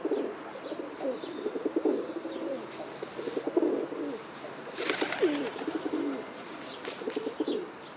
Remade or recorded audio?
recorded